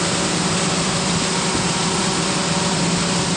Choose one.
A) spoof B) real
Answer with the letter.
B